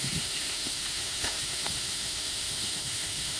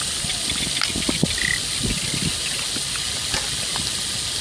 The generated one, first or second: first